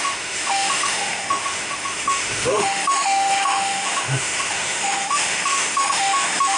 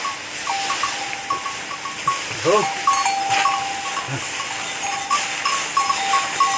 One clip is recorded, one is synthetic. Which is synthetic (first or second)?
first